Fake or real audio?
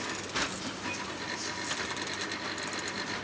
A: real